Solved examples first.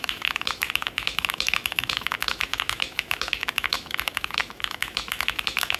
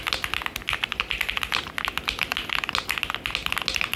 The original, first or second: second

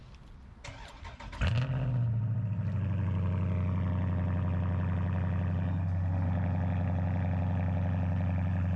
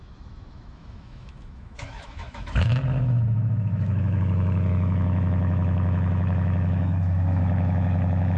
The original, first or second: first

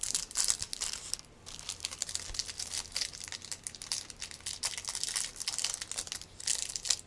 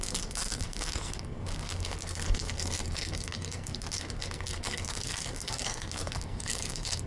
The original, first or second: first